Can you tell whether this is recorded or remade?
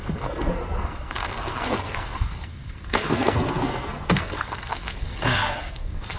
remade